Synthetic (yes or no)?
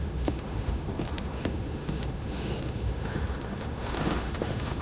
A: yes